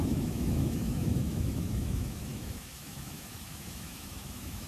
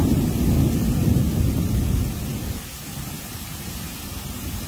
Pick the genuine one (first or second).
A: second